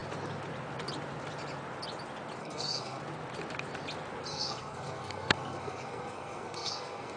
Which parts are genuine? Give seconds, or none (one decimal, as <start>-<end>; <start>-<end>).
0.0-2.4; 3.0-4.3